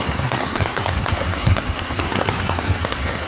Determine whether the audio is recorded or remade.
remade